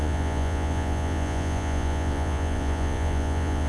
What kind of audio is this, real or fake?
fake